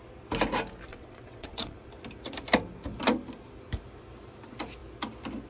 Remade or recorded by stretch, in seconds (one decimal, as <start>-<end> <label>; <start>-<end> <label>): 0.0-0.9 recorded; 0.9-1.9 remade; 1.9-5.5 recorded

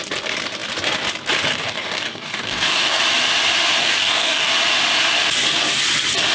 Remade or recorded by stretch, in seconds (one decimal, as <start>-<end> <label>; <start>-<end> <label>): 0.0-1.5 recorded; 1.5-3.0 remade; 3.0-3.8 recorded; 3.8-4.5 remade; 4.5-6.3 recorded